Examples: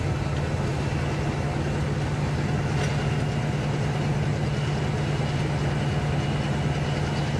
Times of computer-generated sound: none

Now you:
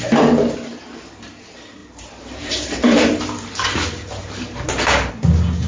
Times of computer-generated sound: 1.8-5.1 (vocoder, BigVGAN v2)

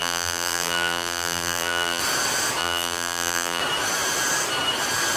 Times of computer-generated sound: 0.0-2.0 (vocoder, BigVGAN v2); 2.6-3.6

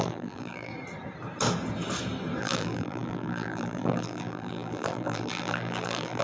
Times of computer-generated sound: 0.0-0.7 (vocoder, BigVGAN v2); 2.4-6.2

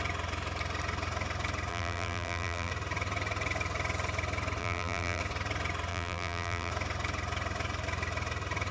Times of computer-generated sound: 1.7-2.7 (vocoder, BigVGAN v2); 4.6-5.2; 5.9-6.7

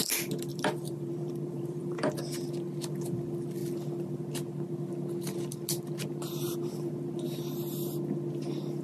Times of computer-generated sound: 0.5-2.2 (vocoder, BigVGAN v2)